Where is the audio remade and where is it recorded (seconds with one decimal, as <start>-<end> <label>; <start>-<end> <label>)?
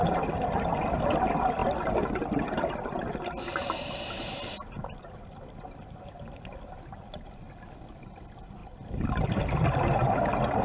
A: 0.0-10.6 recorded